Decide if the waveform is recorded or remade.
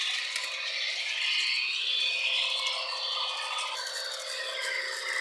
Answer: recorded